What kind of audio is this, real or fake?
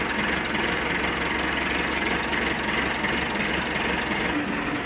real